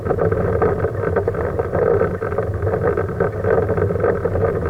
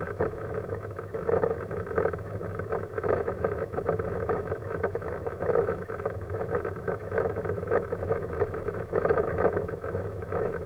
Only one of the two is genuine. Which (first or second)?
first